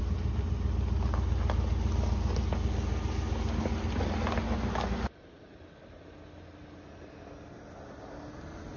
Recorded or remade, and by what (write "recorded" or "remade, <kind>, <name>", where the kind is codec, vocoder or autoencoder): recorded